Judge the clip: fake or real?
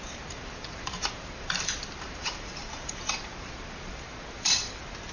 fake